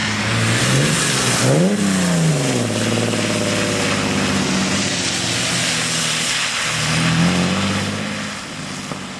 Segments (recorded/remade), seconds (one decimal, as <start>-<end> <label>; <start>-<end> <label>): 0.0-9.2 recorded